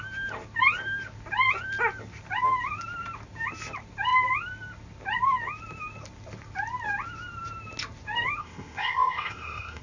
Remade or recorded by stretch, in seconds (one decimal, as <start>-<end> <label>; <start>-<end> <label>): 0.0-8.4 recorded; 8.4-9.8 remade